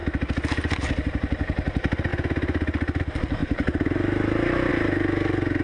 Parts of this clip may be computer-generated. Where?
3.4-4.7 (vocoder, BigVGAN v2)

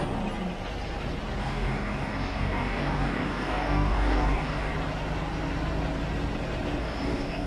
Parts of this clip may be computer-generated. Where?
1.4-4.7 (codec, DAC); 6.8-7.5

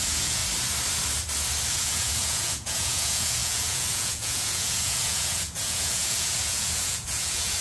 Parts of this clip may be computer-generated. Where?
0.0-0.4 (vocoder, Vocos); 1.7-7.6

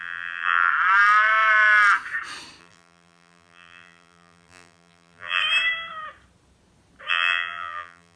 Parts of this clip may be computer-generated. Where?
0.0-0.7 (vocoder, BigVGAN v2); 2.6-5.4; 7.1-8.2

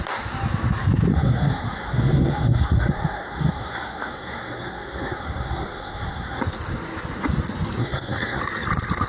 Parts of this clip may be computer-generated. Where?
1.1-6.4 (codec, SNAC); 7.8-8.4